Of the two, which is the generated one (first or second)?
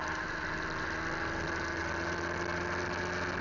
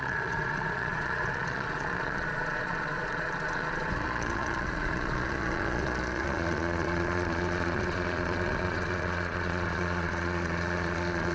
second